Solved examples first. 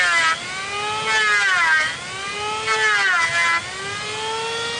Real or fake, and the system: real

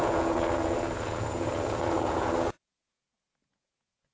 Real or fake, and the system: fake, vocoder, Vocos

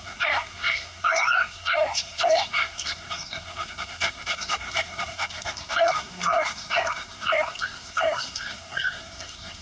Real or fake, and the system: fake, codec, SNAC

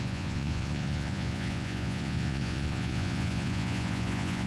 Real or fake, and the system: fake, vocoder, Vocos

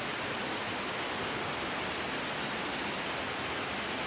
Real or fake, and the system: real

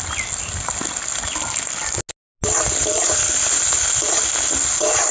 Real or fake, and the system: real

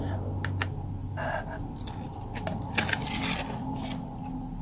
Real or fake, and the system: real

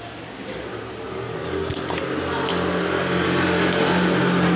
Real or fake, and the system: real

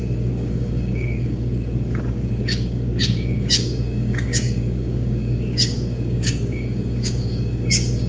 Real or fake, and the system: fake, codec, DAC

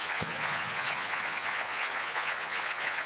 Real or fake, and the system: fake, vocoder, Vocos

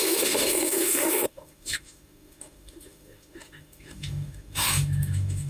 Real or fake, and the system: fake, autoencoder, DAC-VAE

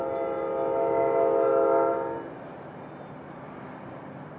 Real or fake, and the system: real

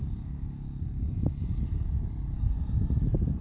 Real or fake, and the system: real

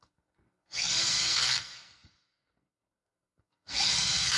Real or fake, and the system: fake, codec, SNAC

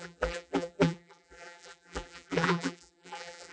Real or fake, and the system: fake, vocoder, BigVGAN v2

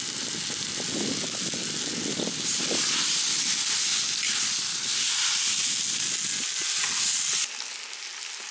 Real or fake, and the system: real